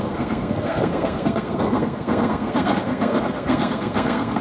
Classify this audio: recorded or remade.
remade